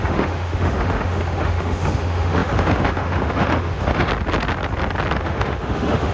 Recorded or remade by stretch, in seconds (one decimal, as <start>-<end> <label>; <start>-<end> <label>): 0.0-4.1 remade; 4.1-5.2 recorded; 5.2-6.1 remade